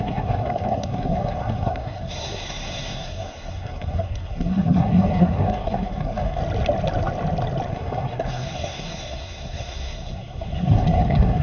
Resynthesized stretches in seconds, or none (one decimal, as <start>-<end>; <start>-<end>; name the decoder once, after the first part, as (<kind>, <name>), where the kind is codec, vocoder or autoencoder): 0.0-6.4 (codec, SNAC); 7.7-11.4